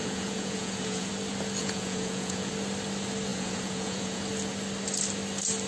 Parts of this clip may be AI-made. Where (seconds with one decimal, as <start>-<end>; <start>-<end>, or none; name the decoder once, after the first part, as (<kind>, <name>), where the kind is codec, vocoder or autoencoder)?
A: 0.0-1.1 (vocoder, Vocos); 1.6-2.5; 3.3-4.2